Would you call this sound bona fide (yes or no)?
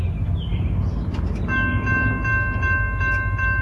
yes